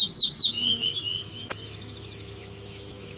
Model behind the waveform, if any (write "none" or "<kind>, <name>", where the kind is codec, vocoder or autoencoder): autoencoder, DAC-VAE